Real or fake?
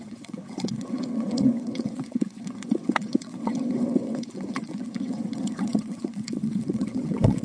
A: fake